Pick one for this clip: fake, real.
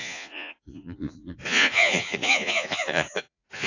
fake